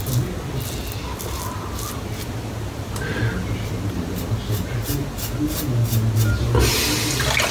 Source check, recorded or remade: recorded